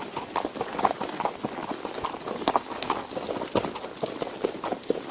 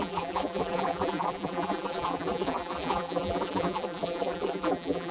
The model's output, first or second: second